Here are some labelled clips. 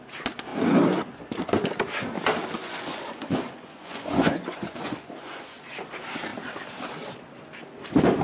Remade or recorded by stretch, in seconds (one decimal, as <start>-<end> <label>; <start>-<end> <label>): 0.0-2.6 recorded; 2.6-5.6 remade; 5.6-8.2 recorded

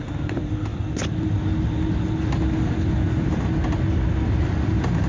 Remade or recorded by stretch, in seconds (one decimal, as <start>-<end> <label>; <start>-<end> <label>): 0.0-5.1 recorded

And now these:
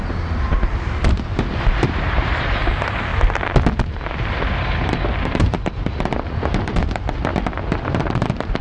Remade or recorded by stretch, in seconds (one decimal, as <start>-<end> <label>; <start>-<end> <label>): 0.0-3.1 remade; 3.1-3.8 recorded; 3.8-8.6 remade

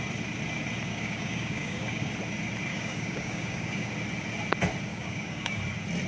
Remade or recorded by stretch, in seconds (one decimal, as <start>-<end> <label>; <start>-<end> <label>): 0.0-0.9 recorded; 0.9-2.1 remade; 2.1-2.7 recorded; 2.7-3.9 remade; 3.9-4.9 recorded; 4.9-5.6 remade; 5.6-6.1 recorded

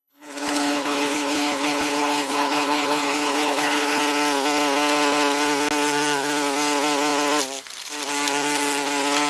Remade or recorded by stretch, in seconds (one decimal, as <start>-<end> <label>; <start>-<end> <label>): 0.0-4.0 remade; 4.0-9.3 recorded

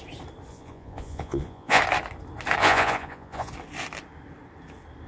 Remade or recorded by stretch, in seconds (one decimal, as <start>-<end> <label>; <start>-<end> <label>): 0.0-0.5 recorded; 0.5-1.8 remade; 1.8-2.6 recorded; 2.6-3.5 remade; 3.5-5.1 recorded